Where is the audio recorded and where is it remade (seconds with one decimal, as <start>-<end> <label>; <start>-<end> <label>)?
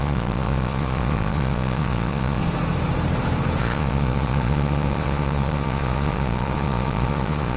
0.0-2.4 remade; 2.4-3.6 recorded; 3.6-7.6 remade